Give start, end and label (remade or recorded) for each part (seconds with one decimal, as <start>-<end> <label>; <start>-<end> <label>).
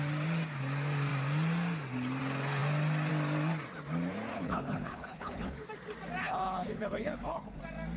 0.0-4.3 recorded; 4.3-5.7 remade; 5.7-6.2 recorded; 6.2-7.6 remade; 7.6-8.0 recorded